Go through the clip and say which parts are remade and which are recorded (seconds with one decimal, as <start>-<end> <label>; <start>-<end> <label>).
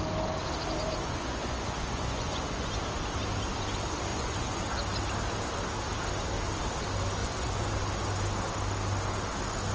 0.0-1.0 recorded; 1.0-2.7 remade; 2.7-4.1 recorded; 4.1-4.6 remade; 4.6-7.2 recorded; 7.2-7.7 remade; 7.7-9.7 recorded